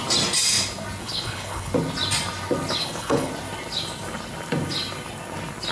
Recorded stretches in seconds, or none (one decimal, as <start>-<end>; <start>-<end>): 0.0-1.0; 1.7-2.8; 3.3-5.7